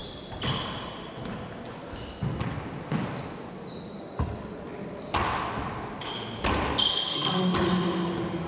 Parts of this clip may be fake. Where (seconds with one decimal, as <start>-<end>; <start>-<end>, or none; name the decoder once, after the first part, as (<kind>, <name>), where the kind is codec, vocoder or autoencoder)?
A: 6.9-7.4 (codec, SNAC)